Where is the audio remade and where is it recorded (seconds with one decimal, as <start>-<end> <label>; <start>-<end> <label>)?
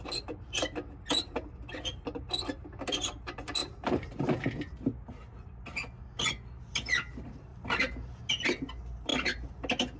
0.0-3.6 recorded; 3.6-4.4 remade; 4.4-7.5 recorded; 7.5-8.3 remade; 8.3-9.1 recorded; 9.1-9.6 remade; 9.6-10.0 recorded